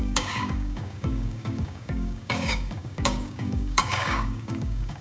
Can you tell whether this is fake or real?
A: fake